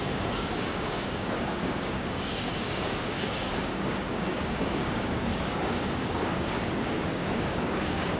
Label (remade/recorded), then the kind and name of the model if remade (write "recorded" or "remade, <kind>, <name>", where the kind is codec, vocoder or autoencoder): remade, codec, DAC